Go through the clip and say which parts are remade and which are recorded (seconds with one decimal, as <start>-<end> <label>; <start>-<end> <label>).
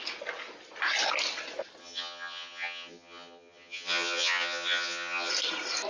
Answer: 0.0-1.8 recorded; 1.8-5.3 remade; 5.3-5.9 recorded